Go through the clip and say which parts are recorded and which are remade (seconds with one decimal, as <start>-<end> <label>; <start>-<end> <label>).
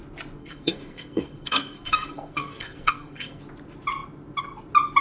0.0-0.4 recorded; 0.4-3.4 remade; 3.4-5.0 recorded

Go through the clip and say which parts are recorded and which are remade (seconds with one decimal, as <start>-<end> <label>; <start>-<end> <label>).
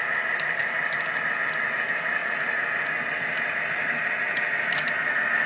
0.0-5.5 recorded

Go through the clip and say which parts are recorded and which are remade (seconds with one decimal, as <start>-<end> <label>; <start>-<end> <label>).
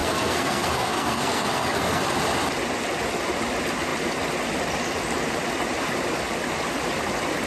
0.0-2.0 remade; 2.0-7.5 recorded